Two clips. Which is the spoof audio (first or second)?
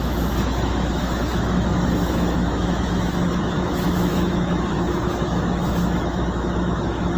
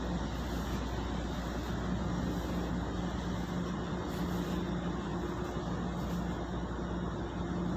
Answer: first